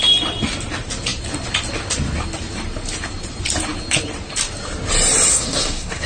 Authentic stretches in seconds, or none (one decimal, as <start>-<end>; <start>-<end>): 0.0-5.3